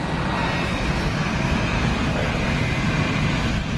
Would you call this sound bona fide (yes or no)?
no